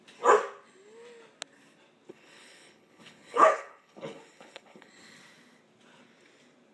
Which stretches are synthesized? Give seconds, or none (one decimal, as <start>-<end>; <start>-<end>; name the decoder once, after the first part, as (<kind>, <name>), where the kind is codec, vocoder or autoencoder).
2.1-4.9 (codec, HILCodec)